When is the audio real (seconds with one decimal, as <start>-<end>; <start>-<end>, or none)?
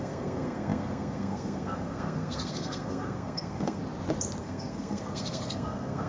3.8-4.4